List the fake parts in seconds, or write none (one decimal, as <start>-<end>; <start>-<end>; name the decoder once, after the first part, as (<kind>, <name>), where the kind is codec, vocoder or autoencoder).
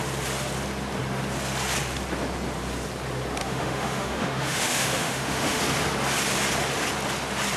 3.4-5.6 (autoencoder, DAC-VAE)